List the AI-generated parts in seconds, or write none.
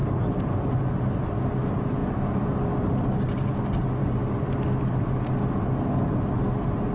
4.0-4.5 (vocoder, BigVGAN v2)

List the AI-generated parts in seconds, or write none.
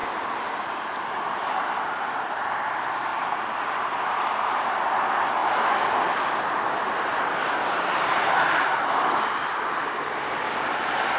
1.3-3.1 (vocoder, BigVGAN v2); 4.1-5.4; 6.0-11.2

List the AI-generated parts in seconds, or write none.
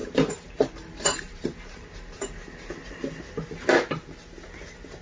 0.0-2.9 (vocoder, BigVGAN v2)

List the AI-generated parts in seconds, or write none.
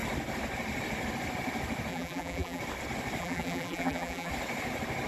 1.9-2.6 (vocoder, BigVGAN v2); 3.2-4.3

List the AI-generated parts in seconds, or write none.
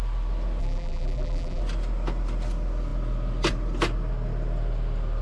0.6-1.6 (vocoder, BigVGAN v2)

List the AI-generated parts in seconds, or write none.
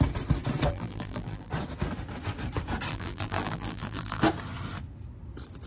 0.7-1.5 (vocoder, BigVGAN v2); 2.9-4.2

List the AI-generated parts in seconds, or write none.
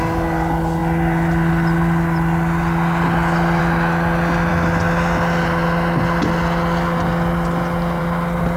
none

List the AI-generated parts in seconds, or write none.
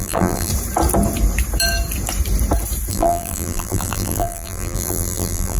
0.0-0.5 (vocoder, BigVGAN v2); 2.9-5.6